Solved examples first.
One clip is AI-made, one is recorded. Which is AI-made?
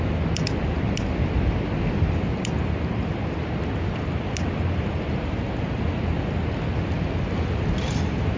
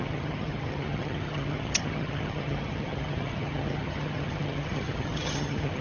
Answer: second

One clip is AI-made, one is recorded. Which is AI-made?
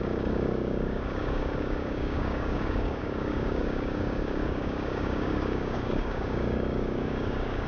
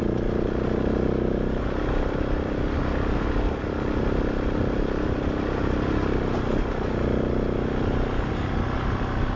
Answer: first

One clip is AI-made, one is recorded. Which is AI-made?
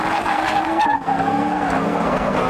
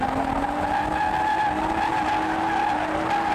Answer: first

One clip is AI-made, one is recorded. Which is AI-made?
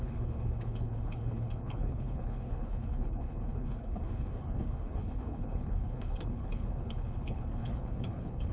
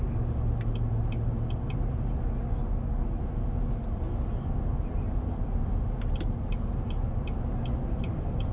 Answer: first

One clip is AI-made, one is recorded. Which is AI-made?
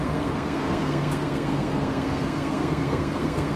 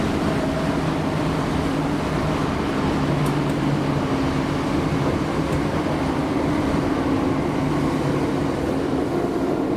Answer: first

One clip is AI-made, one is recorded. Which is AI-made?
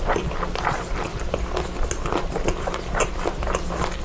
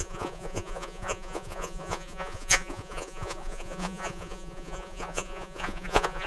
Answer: second